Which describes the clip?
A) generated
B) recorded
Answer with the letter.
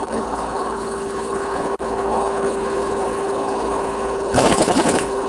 A